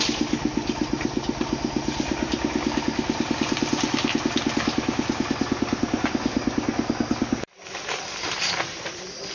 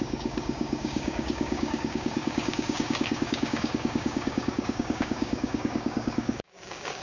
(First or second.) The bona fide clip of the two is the first